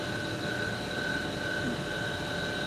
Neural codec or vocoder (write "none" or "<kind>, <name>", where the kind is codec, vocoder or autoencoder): none